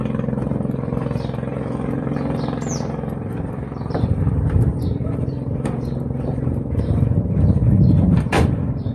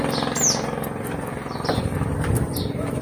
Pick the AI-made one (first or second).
first